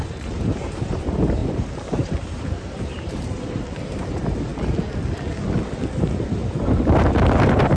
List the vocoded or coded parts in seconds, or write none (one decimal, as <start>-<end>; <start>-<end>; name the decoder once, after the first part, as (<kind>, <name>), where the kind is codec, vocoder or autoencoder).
0.0-4.5 (vocoder, BigVGAN v2); 6.0-7.8